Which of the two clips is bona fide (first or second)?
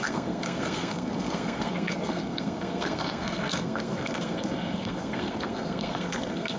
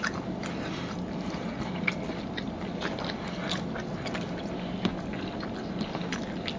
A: second